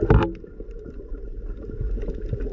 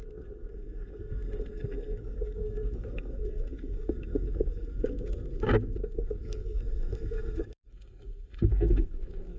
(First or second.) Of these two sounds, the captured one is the first